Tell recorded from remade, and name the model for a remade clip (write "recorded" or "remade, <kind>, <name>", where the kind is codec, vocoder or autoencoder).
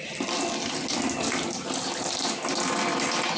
recorded